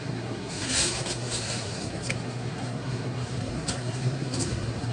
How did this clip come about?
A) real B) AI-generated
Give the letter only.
B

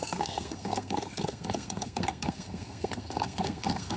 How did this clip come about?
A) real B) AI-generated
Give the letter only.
B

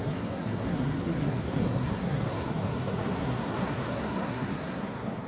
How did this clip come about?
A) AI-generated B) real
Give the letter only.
A